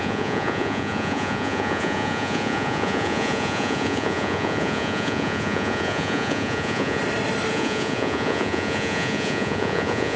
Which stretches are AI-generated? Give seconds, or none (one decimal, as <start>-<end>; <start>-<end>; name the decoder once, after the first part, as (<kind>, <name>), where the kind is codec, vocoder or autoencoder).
0.0-7.0 (vocoder, Vocos); 7.5-10.2